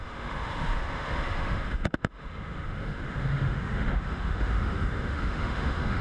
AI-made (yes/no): yes